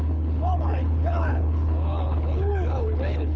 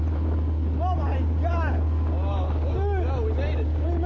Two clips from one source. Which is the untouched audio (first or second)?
second